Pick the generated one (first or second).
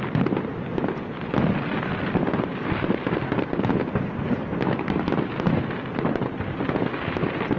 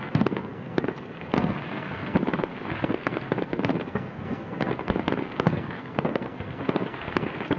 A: second